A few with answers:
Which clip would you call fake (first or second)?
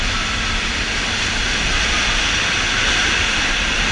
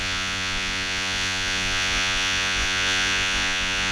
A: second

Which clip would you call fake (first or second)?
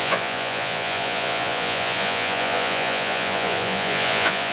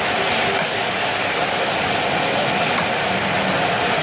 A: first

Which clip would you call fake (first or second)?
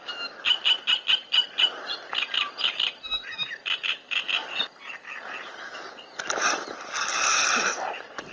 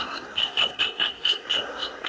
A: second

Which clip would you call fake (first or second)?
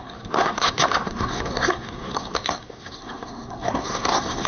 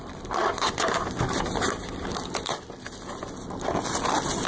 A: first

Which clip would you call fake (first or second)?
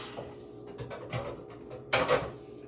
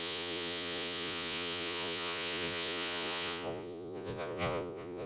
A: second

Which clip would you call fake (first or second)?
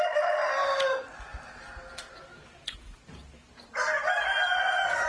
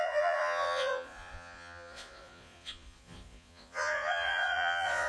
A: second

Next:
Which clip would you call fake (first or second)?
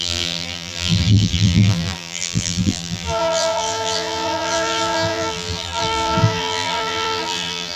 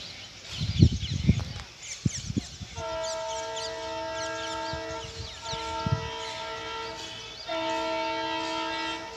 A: first